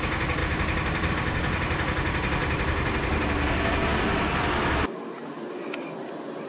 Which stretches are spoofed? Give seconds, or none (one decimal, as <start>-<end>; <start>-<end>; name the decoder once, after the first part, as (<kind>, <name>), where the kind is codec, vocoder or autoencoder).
0.4-1.1 (vocoder, BigVGAN v2)